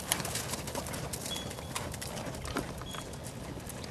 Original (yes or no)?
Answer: yes